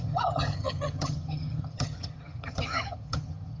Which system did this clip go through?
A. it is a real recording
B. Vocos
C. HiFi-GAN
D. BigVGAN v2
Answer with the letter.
C